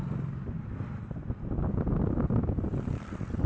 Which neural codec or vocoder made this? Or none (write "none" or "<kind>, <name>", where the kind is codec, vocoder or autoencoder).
none